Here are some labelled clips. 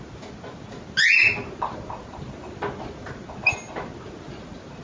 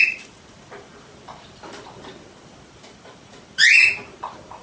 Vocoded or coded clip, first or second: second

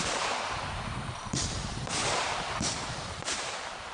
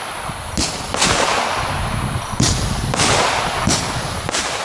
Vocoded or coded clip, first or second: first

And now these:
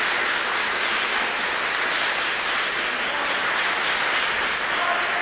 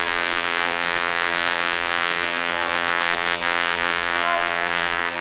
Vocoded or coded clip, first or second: second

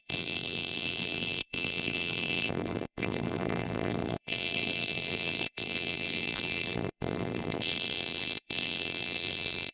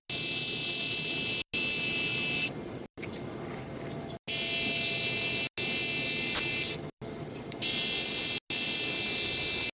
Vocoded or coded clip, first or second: first